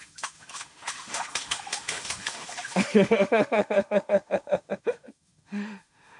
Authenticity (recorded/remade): remade